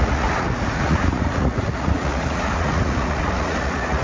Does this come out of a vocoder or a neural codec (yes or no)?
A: yes